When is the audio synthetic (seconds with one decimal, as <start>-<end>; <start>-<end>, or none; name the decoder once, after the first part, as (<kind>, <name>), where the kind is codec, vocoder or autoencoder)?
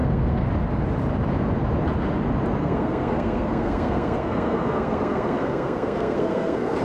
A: 0.0-0.5 (codec, SNAC); 2.6-6.8